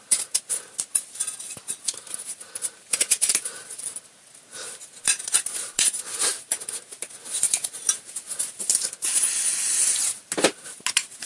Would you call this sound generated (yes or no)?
no